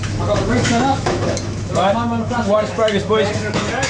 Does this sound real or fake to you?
fake